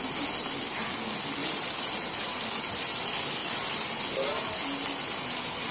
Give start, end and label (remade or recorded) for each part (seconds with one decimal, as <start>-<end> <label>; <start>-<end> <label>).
0.0-1.4 recorded; 1.4-2.4 remade; 2.4-3.4 recorded; 3.4-4.0 remade; 4.0-5.7 recorded